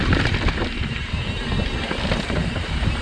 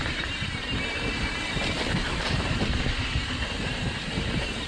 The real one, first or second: first